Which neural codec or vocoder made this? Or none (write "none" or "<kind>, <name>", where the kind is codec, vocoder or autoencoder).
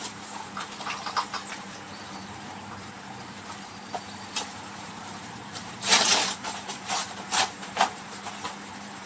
vocoder, BigVGAN v2